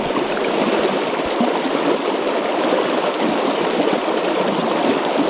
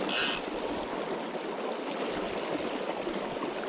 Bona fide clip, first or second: second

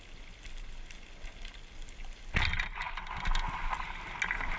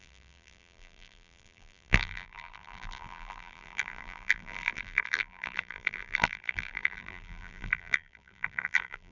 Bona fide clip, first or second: first